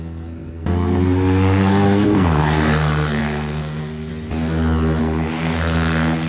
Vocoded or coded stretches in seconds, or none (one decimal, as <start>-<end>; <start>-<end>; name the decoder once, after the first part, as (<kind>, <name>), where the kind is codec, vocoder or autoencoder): 0.0-4.1 (codec, SNAC); 5.0-6.3